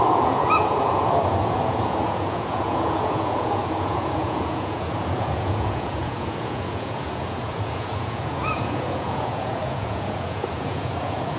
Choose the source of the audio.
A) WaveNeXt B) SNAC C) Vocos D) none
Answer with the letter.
C